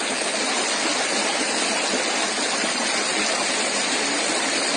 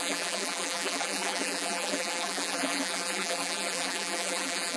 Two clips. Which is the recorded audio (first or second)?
first